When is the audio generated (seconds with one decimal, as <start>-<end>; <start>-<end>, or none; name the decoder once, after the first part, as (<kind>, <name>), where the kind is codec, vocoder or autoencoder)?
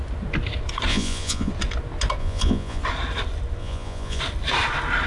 0.9-1.5 (vocoder, Vocos); 2.2-2.8; 3.6-4.2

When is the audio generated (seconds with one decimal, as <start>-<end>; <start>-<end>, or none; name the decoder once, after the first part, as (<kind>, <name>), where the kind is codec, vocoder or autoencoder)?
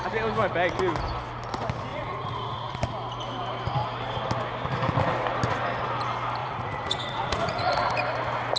1.9-2.9 (vocoder, Vocos); 6.4-7.9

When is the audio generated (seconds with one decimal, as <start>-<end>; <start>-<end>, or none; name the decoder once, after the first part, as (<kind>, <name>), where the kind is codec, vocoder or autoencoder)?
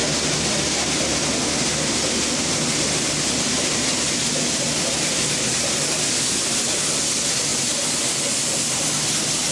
none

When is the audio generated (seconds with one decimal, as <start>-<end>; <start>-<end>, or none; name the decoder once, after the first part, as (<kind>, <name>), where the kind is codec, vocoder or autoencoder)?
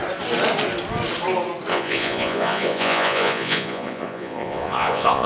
1.7-5.3 (vocoder, Vocos)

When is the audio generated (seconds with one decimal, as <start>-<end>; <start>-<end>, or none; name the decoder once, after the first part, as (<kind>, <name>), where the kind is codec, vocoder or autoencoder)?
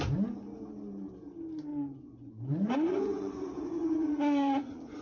1.7-5.0 (vocoder, Vocos)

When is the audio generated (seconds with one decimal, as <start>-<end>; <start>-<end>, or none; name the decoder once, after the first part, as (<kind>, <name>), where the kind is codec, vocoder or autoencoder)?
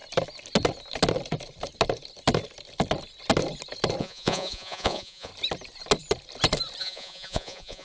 4.0-5.3 (vocoder, Vocos); 6.8-7.8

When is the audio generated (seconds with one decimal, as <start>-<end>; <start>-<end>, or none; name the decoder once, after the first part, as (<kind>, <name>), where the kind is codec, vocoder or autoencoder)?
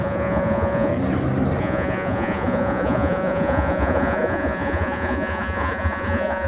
0.0-0.9 (vocoder, Vocos); 1.6-6.5